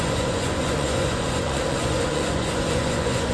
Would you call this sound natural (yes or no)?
no